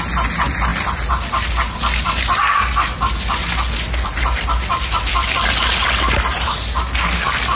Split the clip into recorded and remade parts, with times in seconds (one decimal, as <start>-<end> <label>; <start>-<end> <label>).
0.0-7.6 recorded